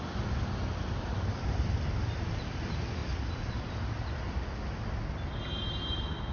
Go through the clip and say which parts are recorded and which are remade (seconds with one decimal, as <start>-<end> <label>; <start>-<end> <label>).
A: 0.0-1.1 recorded; 1.1-2.3 remade; 2.3-3.0 recorded; 3.0-4.3 remade; 4.3-6.3 recorded